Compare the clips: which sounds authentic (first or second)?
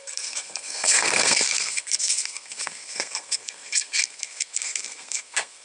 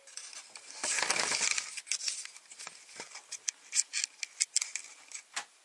second